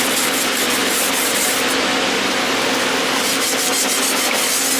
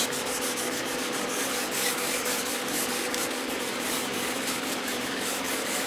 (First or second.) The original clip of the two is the first